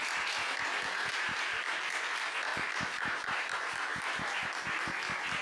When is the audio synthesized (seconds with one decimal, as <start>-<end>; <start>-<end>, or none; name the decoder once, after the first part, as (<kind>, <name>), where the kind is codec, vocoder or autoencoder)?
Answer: 1.1-1.9 (vocoder, BigVGAN v2); 2.5-4.8